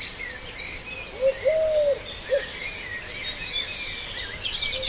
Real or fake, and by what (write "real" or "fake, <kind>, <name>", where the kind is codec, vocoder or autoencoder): real